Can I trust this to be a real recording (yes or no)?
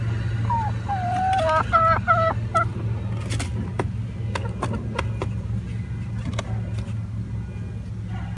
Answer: yes